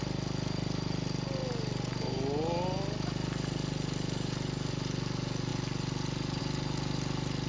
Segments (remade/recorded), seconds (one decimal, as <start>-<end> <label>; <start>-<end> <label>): 0.0-7.5 recorded